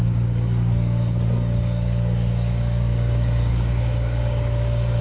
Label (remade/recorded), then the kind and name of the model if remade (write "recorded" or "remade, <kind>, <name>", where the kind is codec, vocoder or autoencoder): remade, codec, DAC